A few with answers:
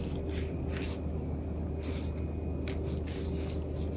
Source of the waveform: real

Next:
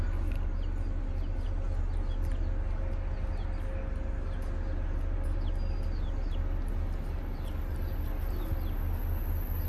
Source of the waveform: real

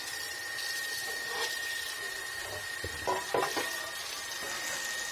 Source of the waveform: real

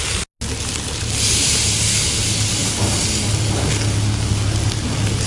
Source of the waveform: real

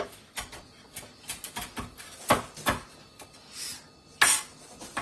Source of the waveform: real